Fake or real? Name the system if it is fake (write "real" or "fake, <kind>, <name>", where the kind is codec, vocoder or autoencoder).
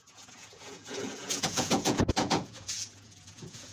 fake, vocoder, Vocos